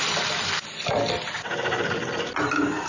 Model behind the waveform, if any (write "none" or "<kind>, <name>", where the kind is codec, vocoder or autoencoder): none